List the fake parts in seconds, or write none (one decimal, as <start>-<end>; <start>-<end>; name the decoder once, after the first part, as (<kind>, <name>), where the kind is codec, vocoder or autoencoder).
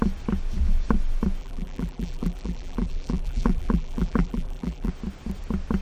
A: 1.4-4.9 (vocoder, BigVGAN v2)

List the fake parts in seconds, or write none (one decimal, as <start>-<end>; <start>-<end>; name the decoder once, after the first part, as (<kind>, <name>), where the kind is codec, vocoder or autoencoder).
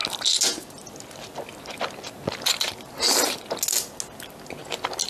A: none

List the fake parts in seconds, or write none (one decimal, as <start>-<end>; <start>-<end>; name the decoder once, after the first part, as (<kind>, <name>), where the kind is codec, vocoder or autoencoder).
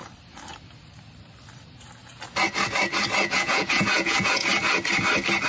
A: 3.3-4.5 (vocoder, Vocos)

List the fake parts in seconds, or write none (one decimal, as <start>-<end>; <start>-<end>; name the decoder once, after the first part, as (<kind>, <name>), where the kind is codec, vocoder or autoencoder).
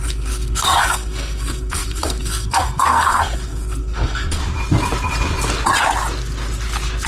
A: 0.0-4.4 (codec, SNAC)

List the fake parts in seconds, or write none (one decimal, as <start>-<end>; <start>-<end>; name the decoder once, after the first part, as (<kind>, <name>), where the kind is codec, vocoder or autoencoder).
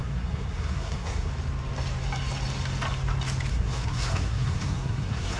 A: 0.0-1.3 (codec, SNAC); 3.5-5.4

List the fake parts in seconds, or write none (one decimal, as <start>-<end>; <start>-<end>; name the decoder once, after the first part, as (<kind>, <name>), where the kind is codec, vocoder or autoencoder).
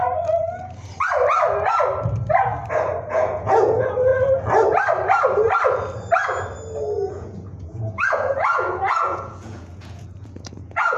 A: 3.1-4.1 (vocoder, Vocos); 7.1-11.0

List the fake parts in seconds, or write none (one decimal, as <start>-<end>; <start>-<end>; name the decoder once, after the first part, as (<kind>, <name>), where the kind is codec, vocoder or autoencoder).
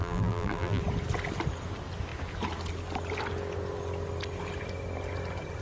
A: 0.0-0.8 (vocoder, BigVGAN v2)